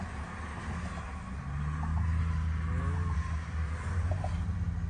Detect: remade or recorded recorded